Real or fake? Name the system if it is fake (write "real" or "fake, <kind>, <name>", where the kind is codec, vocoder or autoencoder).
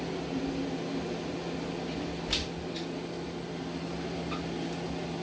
real